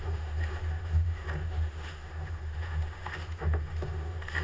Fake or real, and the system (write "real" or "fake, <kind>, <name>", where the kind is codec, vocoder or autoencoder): fake, autoencoder, DAC-VAE